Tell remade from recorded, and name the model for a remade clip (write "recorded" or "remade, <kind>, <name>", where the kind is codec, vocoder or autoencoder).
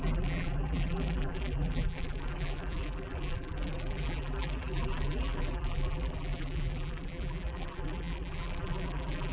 remade, vocoder, BigVGAN v2